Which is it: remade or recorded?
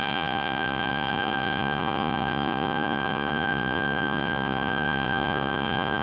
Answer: remade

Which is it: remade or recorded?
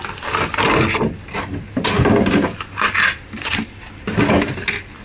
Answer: recorded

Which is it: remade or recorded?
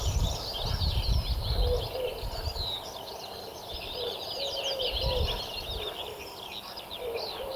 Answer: recorded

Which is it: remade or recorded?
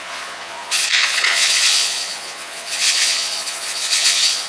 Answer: remade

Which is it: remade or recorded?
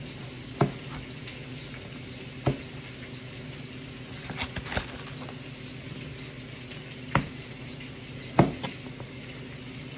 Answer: recorded